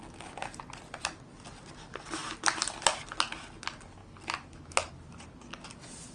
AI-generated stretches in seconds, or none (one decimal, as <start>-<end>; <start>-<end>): none